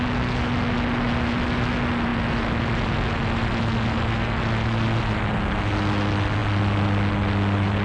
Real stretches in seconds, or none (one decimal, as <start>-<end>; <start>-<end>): 0.0-7.8